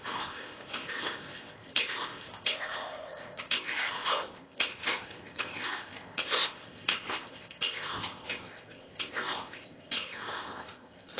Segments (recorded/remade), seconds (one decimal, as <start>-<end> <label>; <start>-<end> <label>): 0.0-11.2 remade